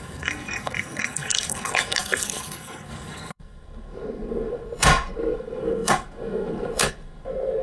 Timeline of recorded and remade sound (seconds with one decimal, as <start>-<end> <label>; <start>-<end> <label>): 0.0-7.6 remade